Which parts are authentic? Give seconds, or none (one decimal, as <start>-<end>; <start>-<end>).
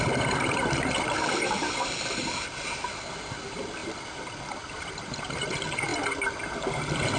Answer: 1.6-2.8; 5.9-6.5